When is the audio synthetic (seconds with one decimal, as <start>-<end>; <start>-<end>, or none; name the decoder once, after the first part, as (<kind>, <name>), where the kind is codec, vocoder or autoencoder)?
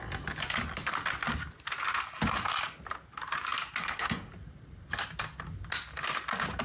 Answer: 3.8-4.3 (codec, SNAC)